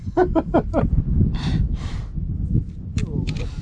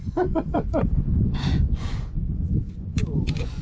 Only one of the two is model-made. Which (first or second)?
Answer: second